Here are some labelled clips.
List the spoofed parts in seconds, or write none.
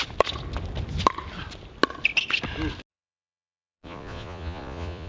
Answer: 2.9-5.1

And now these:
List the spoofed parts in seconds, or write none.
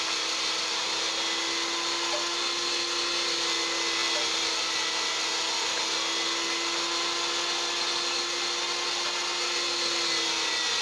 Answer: none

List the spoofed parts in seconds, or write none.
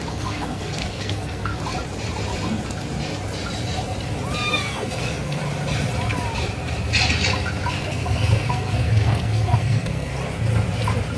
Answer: 0.0-1.5; 4.5-5.4; 7.8-10.1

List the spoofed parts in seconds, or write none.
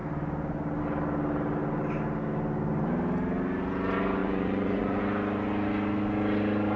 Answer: 4.2-5.0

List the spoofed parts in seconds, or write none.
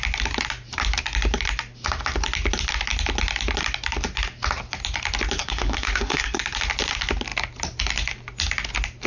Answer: 5.4-6.4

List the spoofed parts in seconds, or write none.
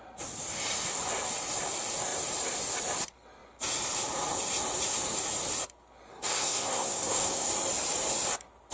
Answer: 6.1-7.5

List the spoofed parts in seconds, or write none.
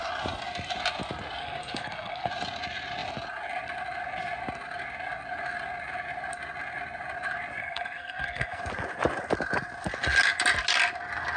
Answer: 1.4-2.3; 7.6-8.6